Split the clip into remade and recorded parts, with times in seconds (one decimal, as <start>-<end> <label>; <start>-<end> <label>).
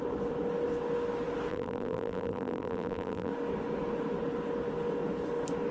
0.0-1.5 recorded; 1.5-3.3 remade; 3.3-5.7 recorded